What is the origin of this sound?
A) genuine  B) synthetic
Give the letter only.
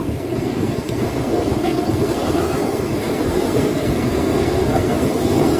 B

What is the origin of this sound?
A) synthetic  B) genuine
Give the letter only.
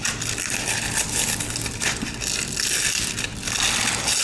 B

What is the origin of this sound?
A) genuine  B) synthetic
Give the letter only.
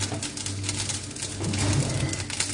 A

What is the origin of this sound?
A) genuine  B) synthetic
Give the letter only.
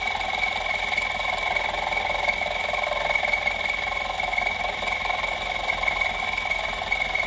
A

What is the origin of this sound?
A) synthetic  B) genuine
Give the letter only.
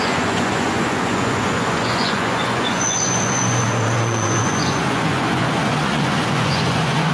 A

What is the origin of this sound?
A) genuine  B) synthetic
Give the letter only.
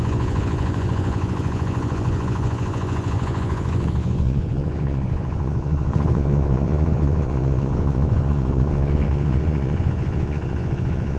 B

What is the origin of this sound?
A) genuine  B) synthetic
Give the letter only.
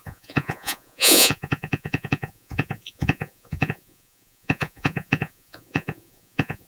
B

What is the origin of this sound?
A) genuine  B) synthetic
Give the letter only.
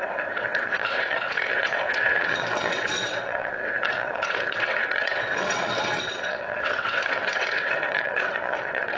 B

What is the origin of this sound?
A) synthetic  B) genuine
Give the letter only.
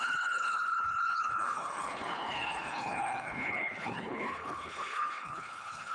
A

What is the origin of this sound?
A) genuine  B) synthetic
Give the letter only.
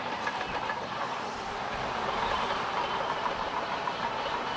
B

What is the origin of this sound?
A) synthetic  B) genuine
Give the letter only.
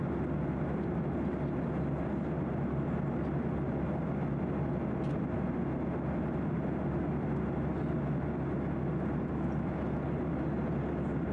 B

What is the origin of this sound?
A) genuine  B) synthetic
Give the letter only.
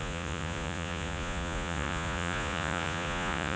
B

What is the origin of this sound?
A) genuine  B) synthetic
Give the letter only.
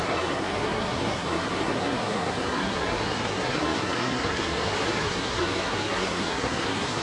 B